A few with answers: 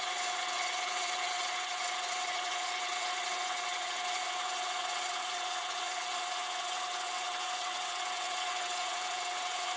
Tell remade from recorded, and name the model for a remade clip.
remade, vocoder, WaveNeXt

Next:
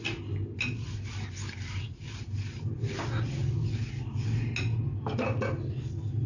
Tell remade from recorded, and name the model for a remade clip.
recorded